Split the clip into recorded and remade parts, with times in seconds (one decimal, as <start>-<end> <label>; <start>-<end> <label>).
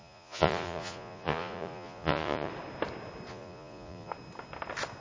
0.0-2.5 remade; 2.5-3.3 recorded; 3.3-4.1 remade; 4.1-5.0 recorded